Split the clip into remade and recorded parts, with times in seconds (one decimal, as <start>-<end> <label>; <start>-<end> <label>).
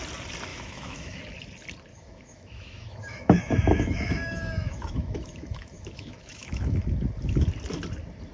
0.0-0.5 recorded; 0.5-1.2 remade; 1.2-1.9 recorded; 1.9-6.8 remade; 6.8-8.3 recorded